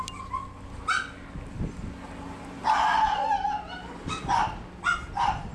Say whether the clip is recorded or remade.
recorded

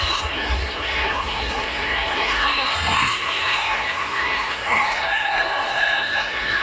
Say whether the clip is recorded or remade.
remade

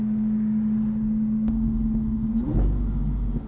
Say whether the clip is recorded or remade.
recorded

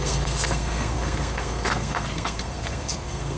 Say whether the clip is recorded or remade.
remade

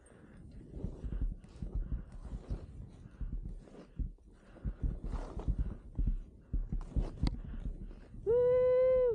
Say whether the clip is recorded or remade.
recorded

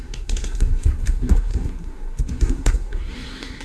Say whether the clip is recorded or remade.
remade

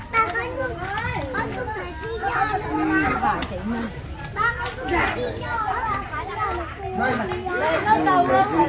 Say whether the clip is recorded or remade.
recorded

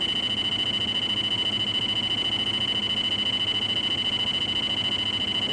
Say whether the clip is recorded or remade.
recorded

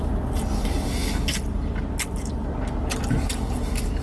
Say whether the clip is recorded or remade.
recorded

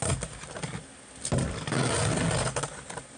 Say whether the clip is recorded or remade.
recorded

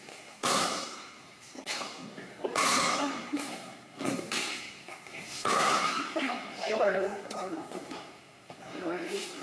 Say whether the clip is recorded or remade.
remade